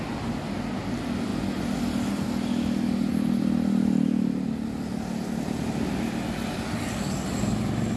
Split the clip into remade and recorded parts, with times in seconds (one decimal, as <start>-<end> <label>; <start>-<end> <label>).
0.0-8.0 recorded